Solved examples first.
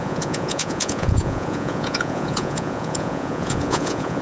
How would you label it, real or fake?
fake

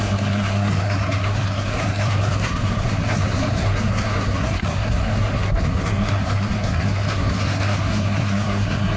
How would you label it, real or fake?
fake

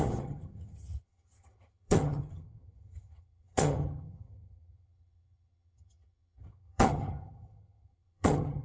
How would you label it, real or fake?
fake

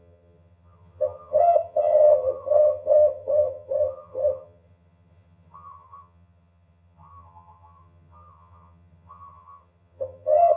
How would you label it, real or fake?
fake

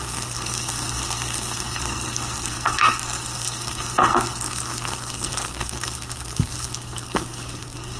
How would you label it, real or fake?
fake